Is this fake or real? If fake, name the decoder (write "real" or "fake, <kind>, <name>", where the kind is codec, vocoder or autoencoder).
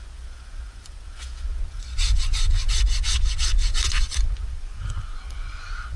fake, vocoder, Vocos